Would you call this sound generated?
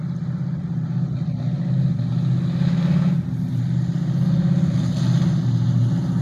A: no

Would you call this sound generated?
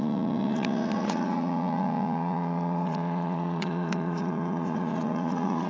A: yes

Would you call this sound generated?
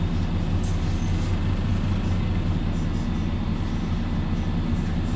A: no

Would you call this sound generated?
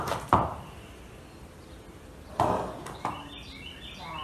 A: no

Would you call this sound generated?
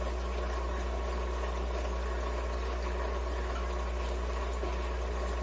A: no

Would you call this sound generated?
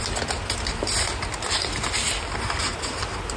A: no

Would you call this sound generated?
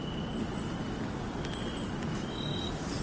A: no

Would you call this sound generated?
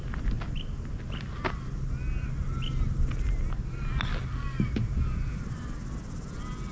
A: no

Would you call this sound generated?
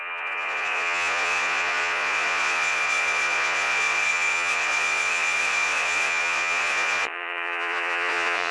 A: yes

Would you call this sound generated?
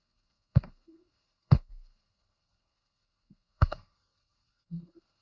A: yes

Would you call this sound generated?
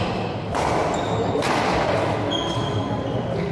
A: no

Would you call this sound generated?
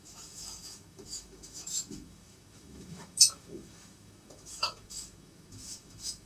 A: yes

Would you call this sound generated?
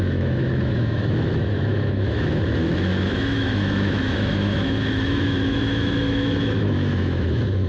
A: yes